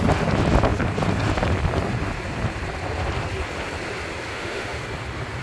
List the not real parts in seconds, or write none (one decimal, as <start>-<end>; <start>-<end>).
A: 4.3-4.8